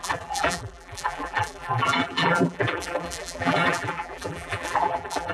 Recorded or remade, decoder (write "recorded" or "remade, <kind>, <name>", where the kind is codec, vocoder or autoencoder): remade, vocoder, BigVGAN v2